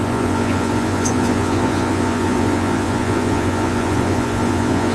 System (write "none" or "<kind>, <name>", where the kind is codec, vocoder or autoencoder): vocoder, Vocos